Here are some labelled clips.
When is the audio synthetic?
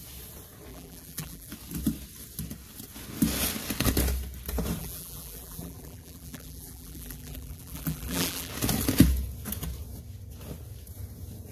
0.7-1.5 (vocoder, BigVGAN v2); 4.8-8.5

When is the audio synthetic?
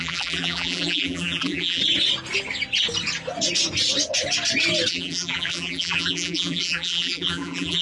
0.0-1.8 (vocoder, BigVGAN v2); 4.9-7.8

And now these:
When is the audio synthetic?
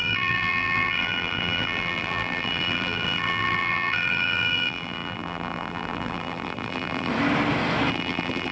0.0-7.1 (vocoder, BigVGAN v2); 7.9-8.5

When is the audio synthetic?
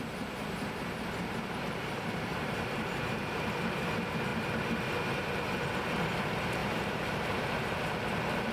2.3-3.9 (vocoder, BigVGAN v2); 6.6-7.8